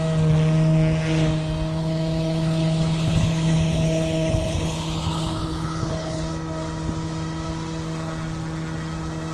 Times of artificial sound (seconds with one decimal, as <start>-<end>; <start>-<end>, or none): 1.8-6.2